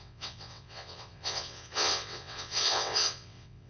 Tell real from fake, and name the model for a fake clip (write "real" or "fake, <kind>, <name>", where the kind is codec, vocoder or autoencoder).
fake, vocoder, WaveNeXt